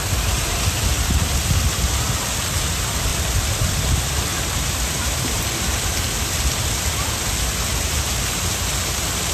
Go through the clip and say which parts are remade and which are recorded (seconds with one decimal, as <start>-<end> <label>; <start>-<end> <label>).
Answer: 0.0-4.3 recorded; 4.3-5.4 remade; 5.4-7.7 recorded; 7.7-8.2 remade; 8.2-9.3 recorded